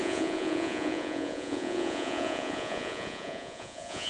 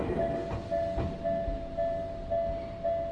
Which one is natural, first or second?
second